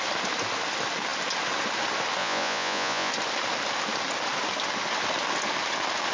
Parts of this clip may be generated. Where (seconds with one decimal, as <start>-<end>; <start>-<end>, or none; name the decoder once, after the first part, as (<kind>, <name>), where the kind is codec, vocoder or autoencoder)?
2.2-3.1 (vocoder, Vocos)

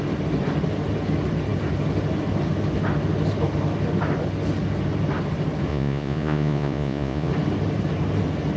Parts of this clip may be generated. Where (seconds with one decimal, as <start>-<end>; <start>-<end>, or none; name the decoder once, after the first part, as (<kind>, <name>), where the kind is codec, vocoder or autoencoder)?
5.7-7.3 (vocoder, Vocos)

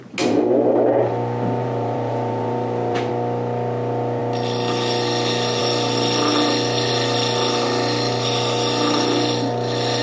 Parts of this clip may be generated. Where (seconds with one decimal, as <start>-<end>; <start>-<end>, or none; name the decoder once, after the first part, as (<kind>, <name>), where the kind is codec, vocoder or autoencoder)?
1.6-3.1 (vocoder, BigVGAN v2)

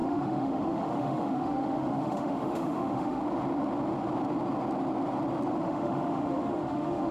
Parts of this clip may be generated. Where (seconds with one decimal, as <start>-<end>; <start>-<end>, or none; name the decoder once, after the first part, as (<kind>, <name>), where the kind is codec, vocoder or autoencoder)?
0.0-3.2 (autoencoder, DAC-VAE); 5.6-7.1

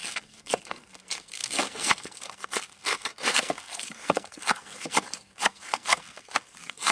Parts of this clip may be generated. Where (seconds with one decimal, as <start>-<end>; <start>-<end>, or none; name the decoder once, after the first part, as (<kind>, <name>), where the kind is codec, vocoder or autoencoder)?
0.0-6.9 (codec, SNAC)

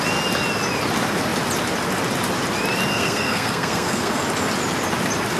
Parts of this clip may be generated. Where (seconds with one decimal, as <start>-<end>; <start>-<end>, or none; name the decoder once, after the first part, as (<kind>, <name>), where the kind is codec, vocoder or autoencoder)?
2.9-4.2 (codec, SNAC)